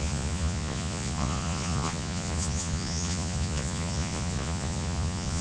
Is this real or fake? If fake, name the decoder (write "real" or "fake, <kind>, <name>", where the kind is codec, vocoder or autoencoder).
fake, vocoder, Vocos